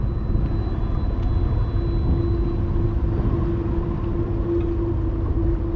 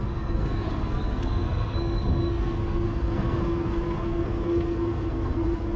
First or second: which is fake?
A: second